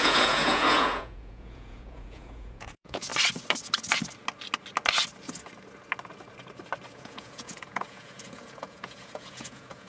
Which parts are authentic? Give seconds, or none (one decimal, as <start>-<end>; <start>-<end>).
3.1-6.9